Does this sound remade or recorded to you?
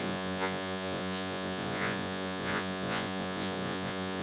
remade